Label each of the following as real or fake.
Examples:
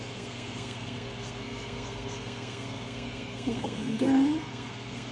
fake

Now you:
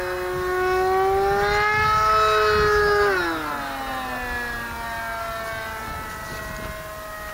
real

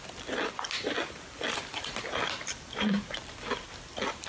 real